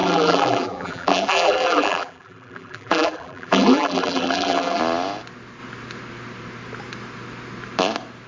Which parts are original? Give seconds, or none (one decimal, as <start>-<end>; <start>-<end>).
4.8-8.3